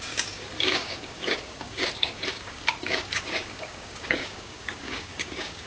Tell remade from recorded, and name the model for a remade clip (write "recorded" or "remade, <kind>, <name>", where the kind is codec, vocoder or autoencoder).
remade, codec, DAC